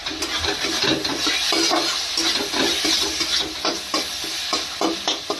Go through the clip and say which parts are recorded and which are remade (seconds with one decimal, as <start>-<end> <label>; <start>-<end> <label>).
0.0-5.4 recorded